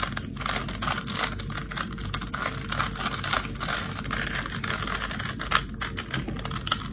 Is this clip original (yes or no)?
yes